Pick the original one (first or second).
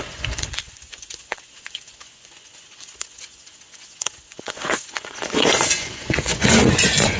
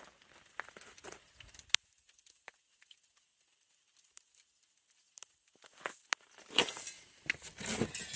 second